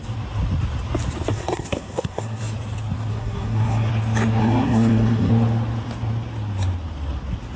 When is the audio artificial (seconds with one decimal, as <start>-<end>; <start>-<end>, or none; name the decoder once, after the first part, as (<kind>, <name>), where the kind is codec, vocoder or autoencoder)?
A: 1.3-2.4 (codec, SNAC); 3.1-3.9; 4.4-5.3